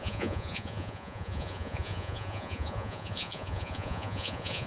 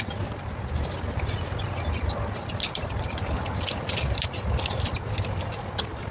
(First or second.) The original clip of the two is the second